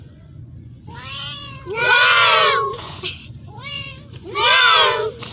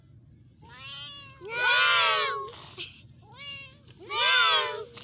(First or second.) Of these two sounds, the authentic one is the second